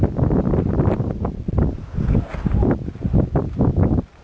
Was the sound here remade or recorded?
recorded